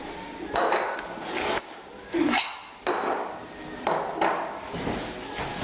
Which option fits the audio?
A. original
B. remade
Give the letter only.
A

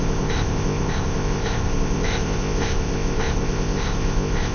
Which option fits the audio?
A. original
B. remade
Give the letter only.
B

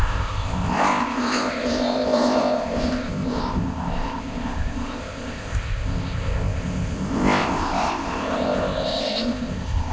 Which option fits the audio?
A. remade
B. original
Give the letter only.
A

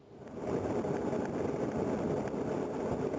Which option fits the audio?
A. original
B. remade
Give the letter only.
A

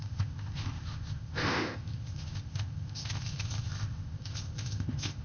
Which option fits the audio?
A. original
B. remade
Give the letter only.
B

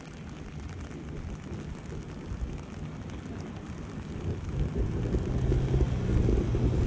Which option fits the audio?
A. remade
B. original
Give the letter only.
B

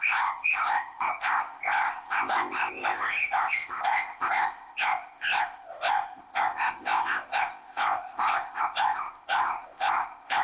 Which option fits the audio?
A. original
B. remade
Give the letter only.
B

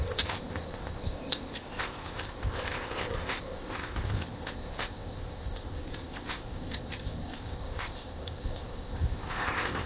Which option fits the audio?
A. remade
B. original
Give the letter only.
A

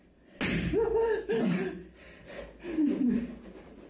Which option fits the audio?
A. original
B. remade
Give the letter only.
A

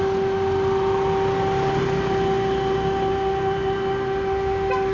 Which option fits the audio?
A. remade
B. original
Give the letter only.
B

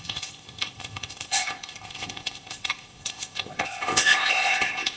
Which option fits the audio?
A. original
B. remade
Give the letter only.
B